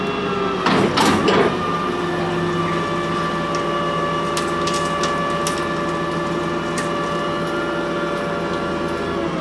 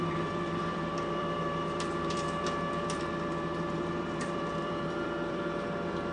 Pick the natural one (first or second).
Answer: first